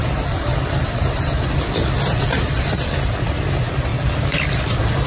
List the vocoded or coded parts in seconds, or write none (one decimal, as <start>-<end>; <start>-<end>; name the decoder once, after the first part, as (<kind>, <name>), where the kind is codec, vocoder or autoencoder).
0.0-2.8 (vocoder, BigVGAN v2)